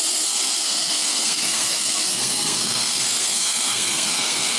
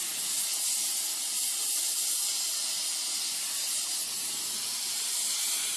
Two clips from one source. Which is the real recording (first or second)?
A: second